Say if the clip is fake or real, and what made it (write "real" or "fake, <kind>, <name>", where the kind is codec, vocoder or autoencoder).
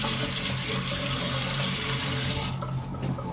fake, vocoder, BigVGAN v2